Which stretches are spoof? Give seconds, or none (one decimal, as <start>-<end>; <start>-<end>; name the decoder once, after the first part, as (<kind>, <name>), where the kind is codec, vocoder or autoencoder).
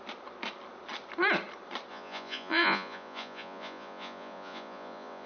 1.9-5.3 (vocoder, Vocos)